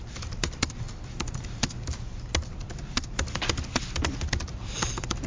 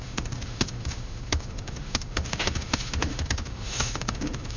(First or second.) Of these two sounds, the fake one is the second